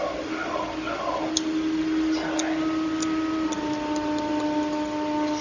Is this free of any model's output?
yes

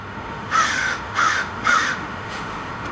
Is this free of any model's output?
no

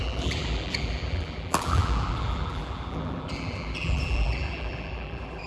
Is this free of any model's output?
no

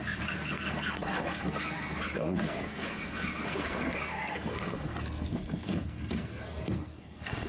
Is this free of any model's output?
no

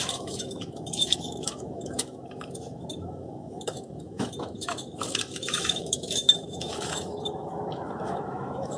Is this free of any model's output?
no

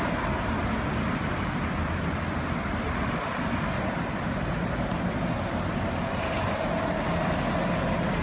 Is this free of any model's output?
yes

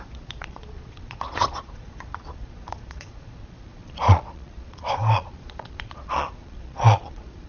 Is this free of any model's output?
no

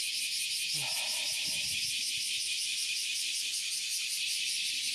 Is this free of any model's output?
yes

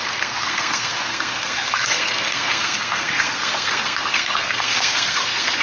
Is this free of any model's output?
no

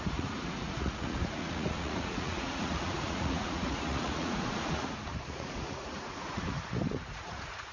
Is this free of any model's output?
no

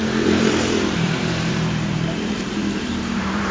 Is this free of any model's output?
no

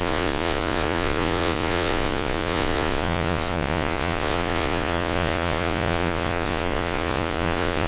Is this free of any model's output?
no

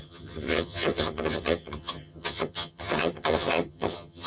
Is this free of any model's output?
no